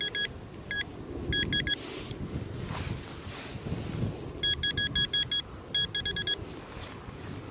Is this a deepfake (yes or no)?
no